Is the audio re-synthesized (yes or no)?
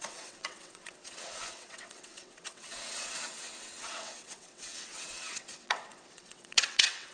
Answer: yes